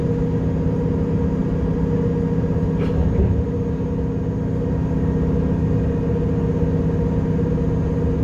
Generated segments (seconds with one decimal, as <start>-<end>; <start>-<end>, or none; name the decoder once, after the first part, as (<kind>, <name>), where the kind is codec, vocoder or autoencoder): none